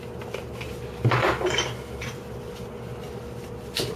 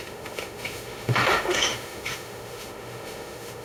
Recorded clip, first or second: first